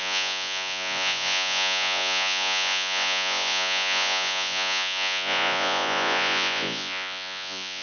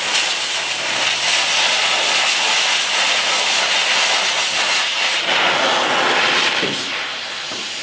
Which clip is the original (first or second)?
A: second